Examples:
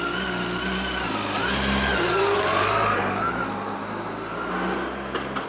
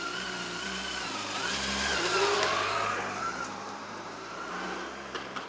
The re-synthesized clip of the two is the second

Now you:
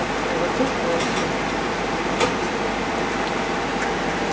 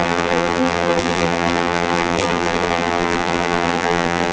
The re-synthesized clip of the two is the second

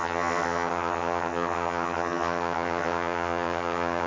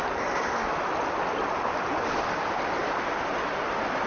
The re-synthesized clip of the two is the first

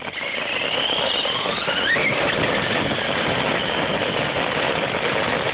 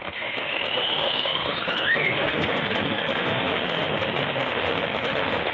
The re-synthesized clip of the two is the second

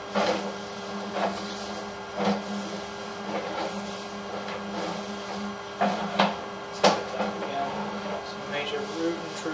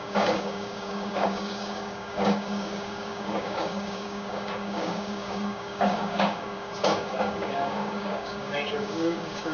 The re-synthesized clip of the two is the second